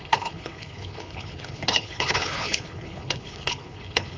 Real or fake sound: fake